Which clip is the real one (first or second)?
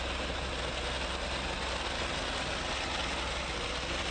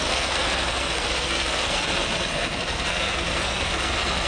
first